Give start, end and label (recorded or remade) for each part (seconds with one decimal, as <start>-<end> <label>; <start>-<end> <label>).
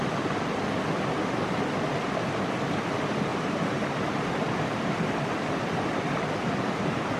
0.0-3.3 recorded; 3.3-3.8 remade; 3.8-7.2 recorded